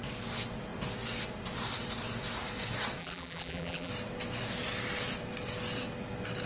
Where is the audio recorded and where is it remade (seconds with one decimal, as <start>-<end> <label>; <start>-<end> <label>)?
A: 0.0-3.0 recorded; 3.0-3.9 remade; 3.9-6.5 recorded